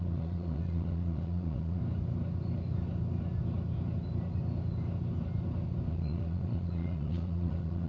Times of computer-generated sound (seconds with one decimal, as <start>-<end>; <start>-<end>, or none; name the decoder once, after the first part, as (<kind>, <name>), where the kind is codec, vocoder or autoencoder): 0.0-1.8 (vocoder, Vocos); 5.9-7.9